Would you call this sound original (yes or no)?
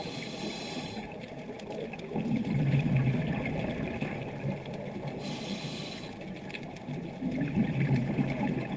yes